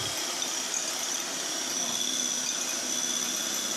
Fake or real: real